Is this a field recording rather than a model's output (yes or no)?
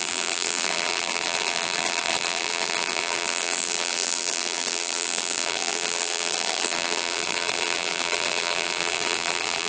no